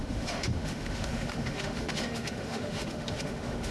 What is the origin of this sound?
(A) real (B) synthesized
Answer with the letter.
B